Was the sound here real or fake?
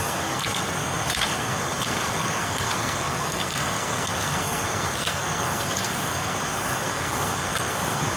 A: fake